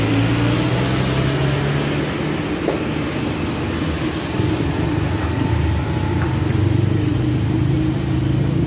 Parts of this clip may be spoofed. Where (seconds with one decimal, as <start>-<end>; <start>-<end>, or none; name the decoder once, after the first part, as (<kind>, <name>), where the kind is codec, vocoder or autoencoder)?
7.1-8.7 (vocoder, BigVGAN v2)